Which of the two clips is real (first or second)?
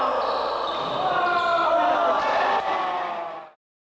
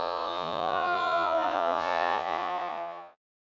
first